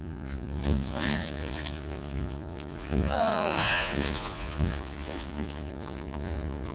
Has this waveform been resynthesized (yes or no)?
yes